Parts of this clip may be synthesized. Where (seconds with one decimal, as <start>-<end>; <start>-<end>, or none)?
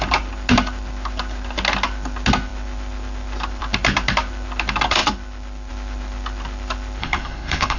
7.0-7.8